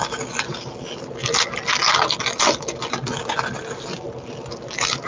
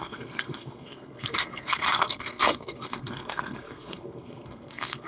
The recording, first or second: first